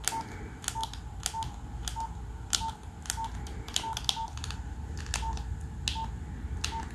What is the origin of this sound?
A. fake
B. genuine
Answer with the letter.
B